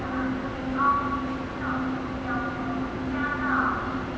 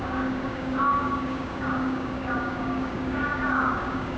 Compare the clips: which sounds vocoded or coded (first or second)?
second